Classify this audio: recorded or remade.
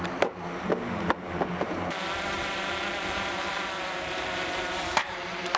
remade